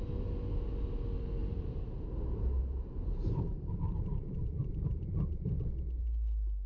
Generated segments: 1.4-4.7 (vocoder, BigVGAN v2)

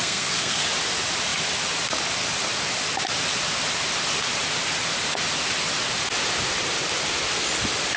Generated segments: 0.0-0.6 (codec, SNAC)

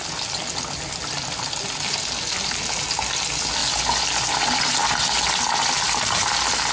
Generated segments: none

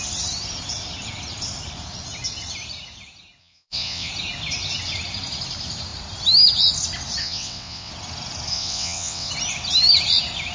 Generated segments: 3.4-4.1 (vocoder, WaveNeXt); 7.2-7.9; 8.5-9.3

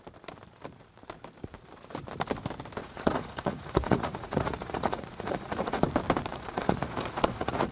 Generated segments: 2.8-5.8 (vocoder, Vocos); 6.3-7.7

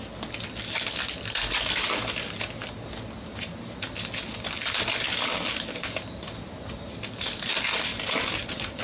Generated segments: 7.9-8.8 (vocoder, BigVGAN v2)

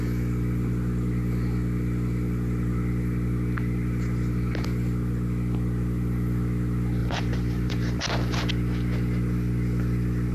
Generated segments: 7.0-8.0 (vocoder, BigVGAN v2)